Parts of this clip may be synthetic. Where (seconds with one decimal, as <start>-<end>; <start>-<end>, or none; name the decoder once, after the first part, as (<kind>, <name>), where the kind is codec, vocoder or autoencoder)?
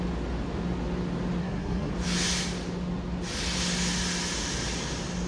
1.4-1.9 (codec, SNAC)